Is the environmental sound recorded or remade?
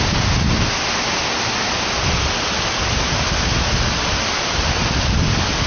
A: recorded